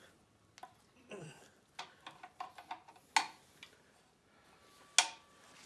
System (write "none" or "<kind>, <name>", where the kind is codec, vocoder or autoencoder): none